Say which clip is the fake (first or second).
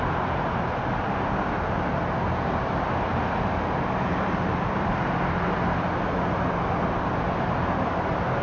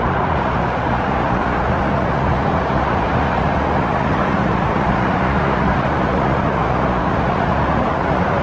second